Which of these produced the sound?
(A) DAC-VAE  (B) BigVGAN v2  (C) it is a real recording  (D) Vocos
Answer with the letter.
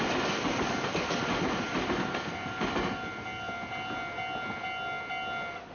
C